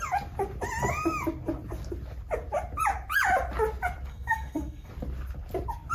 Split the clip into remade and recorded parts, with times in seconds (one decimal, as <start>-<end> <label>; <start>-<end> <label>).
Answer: 0.0-4.1 recorded; 4.1-4.9 remade; 4.9-5.9 recorded

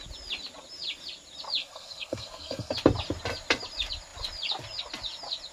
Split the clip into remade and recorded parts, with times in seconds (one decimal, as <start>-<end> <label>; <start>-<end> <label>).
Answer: 0.0-1.6 recorded; 1.6-2.7 remade; 2.7-5.5 recorded

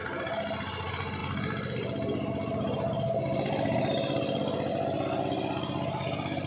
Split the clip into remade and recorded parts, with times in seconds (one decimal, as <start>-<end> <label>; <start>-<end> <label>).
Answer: 0.0-6.5 recorded